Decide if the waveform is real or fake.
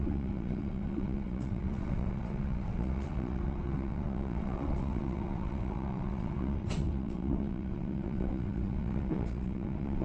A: fake